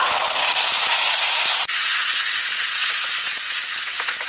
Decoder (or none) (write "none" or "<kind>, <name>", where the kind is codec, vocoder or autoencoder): vocoder, Vocos